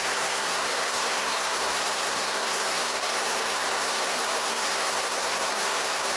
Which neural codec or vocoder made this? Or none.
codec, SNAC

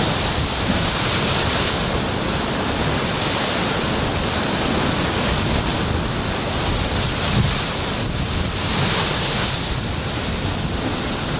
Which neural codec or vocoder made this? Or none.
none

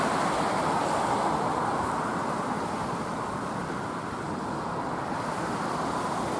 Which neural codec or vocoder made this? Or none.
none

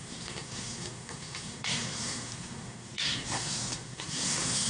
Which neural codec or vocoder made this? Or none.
codec, SNAC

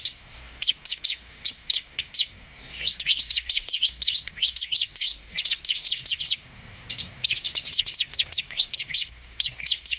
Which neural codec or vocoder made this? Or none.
codec, SNAC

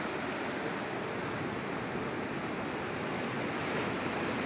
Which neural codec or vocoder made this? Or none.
none